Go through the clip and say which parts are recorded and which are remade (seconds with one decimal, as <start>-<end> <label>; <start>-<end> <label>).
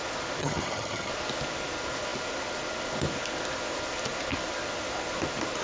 0.0-0.4 recorded; 0.4-1.1 remade; 1.1-5.6 recorded